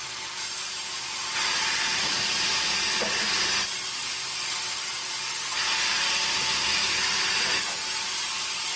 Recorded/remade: recorded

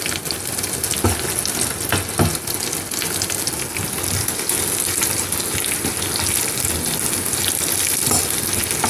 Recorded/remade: recorded